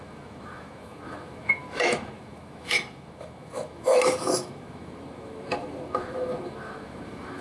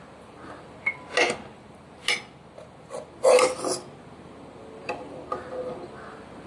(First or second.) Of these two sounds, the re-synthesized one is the first